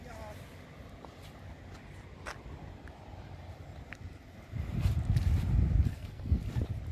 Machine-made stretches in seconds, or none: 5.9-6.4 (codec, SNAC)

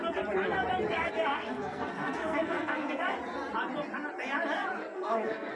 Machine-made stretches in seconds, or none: 1.3-3.0 (codec, SNAC); 4.8-5.6

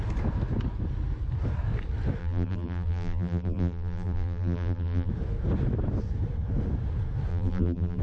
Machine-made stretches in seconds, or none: 2.2-5.1 (vocoder, BigVGAN v2); 7.3-8.0

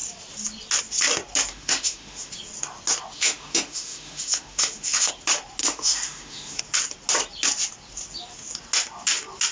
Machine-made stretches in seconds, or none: 1.5-2.3 (autoencoder, DAC-VAE); 3.1-5.1; 5.6-6.6

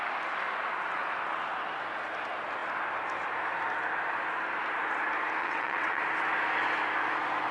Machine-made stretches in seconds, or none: 5.4-6.0 (vocoder, WaveNeXt)

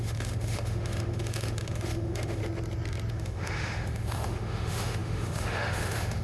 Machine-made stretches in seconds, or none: 0.0-2.4 (autoencoder, DAC-VAE); 3.1-6.2

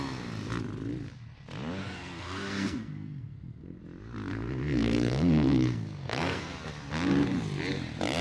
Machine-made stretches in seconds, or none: 1.8-3.8 (codec, SNAC); 4.3-6.5

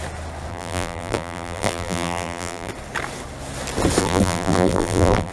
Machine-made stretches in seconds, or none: 0.5-2.7 (vocoder, BigVGAN v2); 4.0-5.3